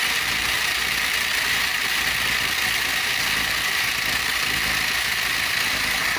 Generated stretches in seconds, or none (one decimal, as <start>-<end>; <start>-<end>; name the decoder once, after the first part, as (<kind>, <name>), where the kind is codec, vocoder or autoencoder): none